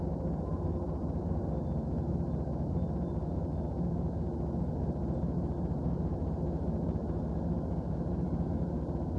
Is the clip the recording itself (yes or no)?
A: yes